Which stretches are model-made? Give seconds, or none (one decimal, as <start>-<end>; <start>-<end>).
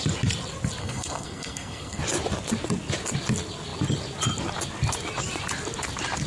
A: 0.8-2.0